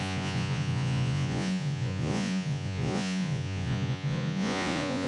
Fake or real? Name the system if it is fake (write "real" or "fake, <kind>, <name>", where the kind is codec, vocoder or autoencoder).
fake, vocoder, Vocos